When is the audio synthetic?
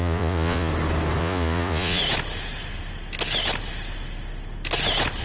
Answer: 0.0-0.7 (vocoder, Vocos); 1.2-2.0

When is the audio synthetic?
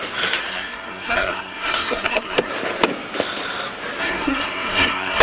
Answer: 0.4-2.5 (codec, SNAC); 4.0-5.2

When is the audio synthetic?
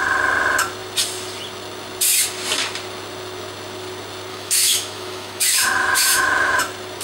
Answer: 4.3-6.6 (autoencoder, DAC-VAE)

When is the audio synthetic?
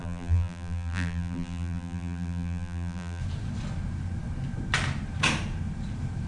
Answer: 0.0-3.2 (vocoder, BigVGAN v2)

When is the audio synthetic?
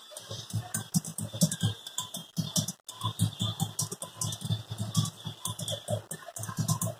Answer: 0.0-2.2 (vocoder, BigVGAN v2); 6.3-7.0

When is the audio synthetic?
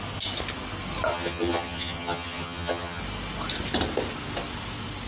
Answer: 1.1-3.0 (vocoder, HiFi-GAN)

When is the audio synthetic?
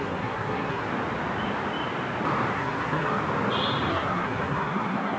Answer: 0.0-0.9 (codec, SNAC); 2.5-3.2; 3.9-5.2